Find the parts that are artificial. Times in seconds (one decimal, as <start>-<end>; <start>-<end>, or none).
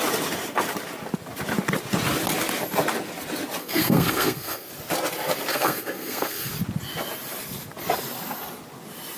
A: 3.6-4.7; 5.5-6.5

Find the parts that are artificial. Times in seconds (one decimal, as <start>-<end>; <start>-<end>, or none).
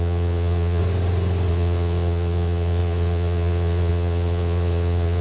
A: 0.0-0.8; 1.5-5.2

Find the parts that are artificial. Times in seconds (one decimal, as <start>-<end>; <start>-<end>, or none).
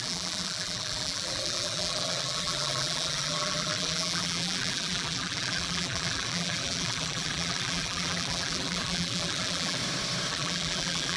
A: 0.0-9.8; 10.3-11.2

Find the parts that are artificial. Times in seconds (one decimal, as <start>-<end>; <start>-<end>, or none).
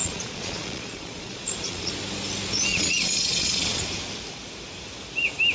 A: 0.0-1.9; 2.7-3.8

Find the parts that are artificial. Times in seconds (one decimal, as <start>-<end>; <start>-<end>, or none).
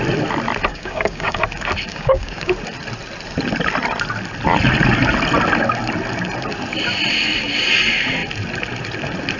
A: 0.7-1.4; 1.9-2.5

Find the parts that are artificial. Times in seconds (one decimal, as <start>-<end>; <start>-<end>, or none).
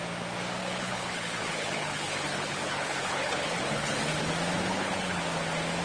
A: 0.6-4.1; 4.7-5.2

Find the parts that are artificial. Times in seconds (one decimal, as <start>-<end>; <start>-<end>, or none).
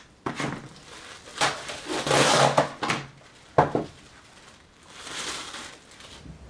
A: none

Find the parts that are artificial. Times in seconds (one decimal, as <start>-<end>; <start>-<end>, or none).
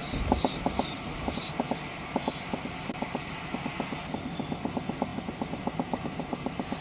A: 0.0-1.5; 5.1-6.8